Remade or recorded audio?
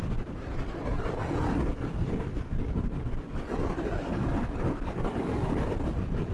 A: recorded